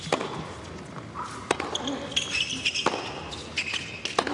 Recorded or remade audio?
recorded